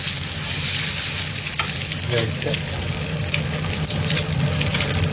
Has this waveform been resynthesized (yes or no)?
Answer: no